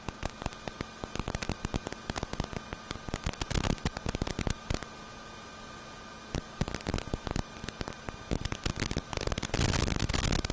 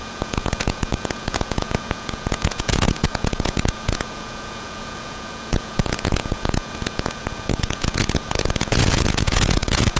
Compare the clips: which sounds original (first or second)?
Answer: first